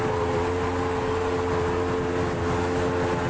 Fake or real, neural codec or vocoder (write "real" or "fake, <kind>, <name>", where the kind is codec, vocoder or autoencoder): real